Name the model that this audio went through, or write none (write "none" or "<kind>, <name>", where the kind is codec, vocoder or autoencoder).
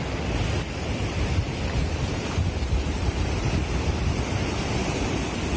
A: none